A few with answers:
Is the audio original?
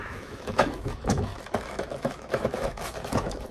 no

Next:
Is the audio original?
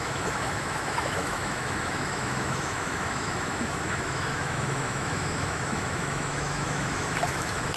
no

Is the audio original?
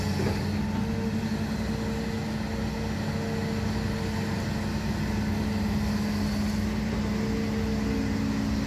yes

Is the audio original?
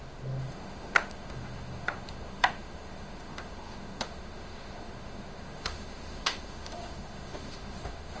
no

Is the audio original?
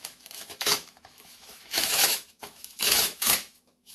no